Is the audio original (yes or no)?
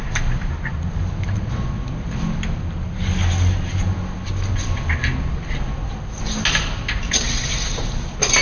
yes